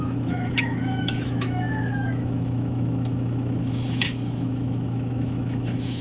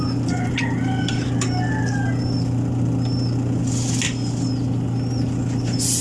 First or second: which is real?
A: second